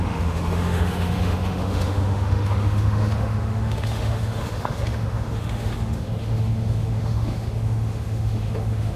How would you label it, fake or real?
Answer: fake